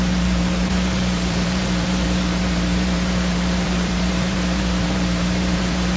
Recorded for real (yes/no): no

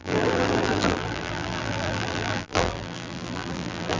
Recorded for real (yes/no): no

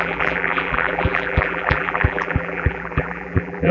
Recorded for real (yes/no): no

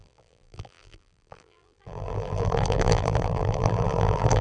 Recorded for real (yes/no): no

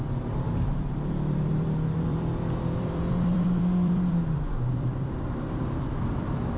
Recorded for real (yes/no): no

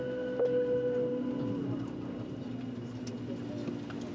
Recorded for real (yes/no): yes